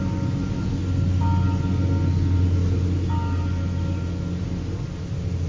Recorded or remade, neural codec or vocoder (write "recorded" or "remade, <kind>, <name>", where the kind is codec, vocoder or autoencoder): recorded